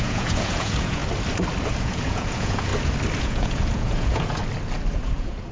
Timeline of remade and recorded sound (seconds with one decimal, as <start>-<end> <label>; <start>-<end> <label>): 0.0-1.0 remade; 1.0-1.8 recorded; 1.8-2.7 remade; 2.7-3.2 recorded; 3.2-4.4 remade; 4.4-4.9 recorded; 4.9-5.5 remade